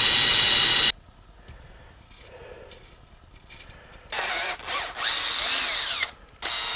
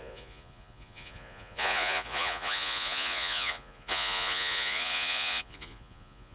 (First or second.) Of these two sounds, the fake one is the second